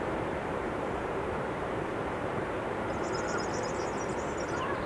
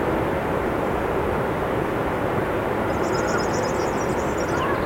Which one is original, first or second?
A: second